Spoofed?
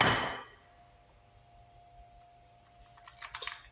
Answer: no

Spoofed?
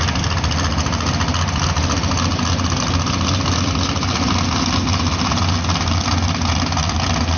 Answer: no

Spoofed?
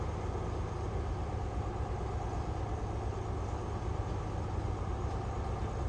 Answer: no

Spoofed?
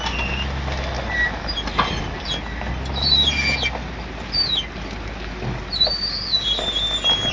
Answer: no